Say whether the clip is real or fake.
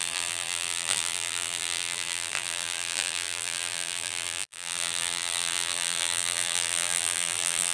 fake